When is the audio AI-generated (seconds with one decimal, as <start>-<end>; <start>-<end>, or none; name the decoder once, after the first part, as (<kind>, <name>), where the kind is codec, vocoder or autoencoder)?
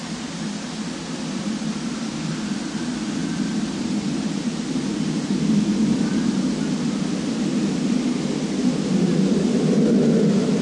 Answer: 0.0-2.3 (vocoder, BigVGAN v2); 3.2-4.7; 7.5-8.0